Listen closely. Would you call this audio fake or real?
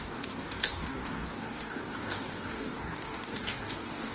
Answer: fake